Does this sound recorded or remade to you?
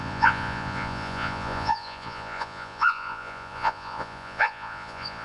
remade